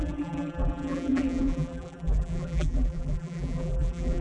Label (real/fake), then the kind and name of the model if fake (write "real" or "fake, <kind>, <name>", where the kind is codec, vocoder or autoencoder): fake, vocoder, BigVGAN v2